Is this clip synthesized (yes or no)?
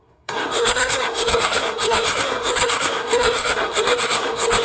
yes